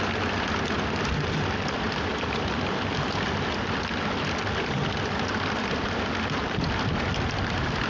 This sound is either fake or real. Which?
real